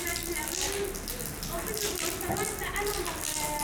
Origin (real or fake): real